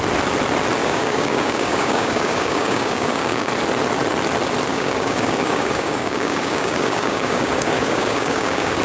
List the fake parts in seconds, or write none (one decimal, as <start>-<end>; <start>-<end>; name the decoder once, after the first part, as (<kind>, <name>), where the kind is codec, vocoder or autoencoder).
0.8-3.5 (codec, DAC); 4.7-8.8